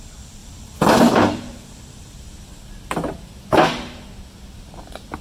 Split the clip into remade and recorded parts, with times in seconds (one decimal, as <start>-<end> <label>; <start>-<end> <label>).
0.0-0.4 recorded; 0.4-3.5 remade; 3.5-5.2 recorded